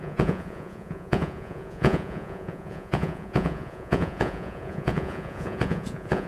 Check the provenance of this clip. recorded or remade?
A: remade